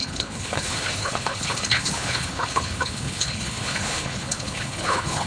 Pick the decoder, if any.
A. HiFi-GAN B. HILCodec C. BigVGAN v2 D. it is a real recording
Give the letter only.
B